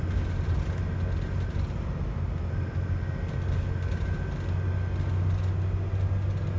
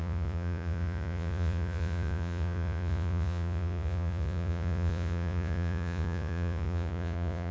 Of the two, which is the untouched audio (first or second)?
first